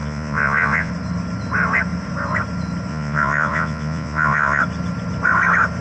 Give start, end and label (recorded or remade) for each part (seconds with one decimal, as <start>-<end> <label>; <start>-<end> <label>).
0.0-0.9 remade; 0.9-2.9 recorded; 2.9-4.6 remade; 4.6-5.8 recorded